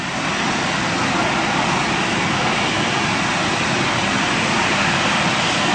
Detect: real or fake real